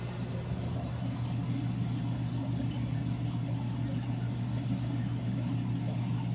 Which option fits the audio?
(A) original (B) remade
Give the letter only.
A